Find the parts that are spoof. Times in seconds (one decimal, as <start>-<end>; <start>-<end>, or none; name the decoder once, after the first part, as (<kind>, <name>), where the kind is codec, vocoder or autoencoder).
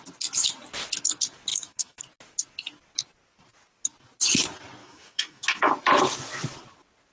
1.5-2.0 (autoencoder, DAC-VAE); 4.8-5.7